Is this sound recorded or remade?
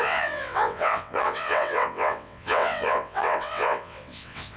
remade